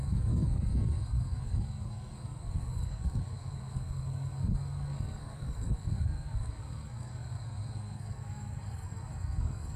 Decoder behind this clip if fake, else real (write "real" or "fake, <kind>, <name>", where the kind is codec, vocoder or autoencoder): fake, codec, SNAC